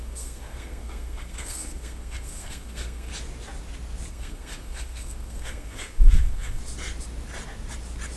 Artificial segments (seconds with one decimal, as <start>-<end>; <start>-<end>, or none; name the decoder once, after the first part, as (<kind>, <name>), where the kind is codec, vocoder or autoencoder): 0.0-3.1 (codec, SNAC); 4.1-6.6